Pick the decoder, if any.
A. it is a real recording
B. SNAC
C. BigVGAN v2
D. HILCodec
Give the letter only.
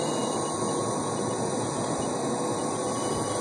A